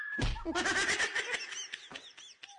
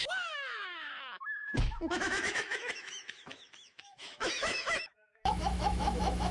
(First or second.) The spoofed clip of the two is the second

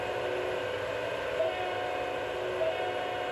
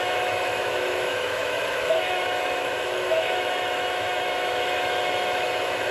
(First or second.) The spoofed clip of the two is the second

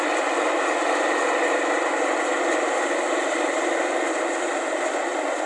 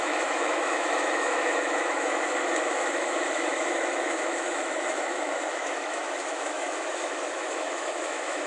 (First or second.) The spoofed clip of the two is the second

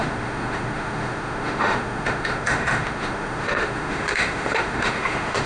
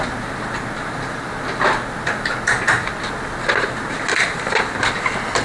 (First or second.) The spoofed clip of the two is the first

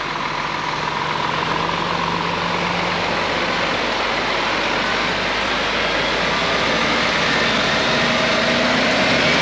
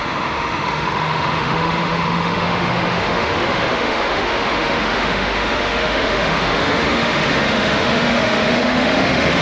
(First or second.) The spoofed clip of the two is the second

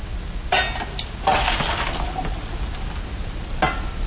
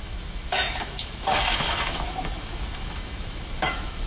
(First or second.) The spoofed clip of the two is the second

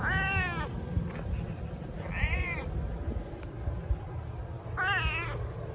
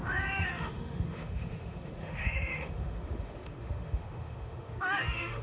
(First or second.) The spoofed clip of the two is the second